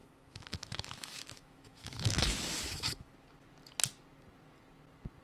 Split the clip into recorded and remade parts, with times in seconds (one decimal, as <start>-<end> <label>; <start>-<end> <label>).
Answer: 0.0-3.1 remade; 3.1-5.2 recorded